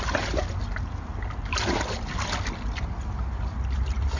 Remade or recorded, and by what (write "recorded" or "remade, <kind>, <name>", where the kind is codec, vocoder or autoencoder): recorded